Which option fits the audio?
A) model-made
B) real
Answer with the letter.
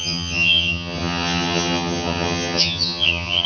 A